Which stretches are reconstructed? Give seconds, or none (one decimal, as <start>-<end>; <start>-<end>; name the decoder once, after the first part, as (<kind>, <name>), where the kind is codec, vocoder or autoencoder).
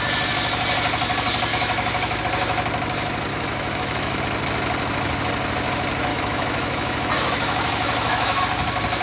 1.5-2.2 (autoencoder, DAC-VAE); 3.3-4.2; 6.1-8.4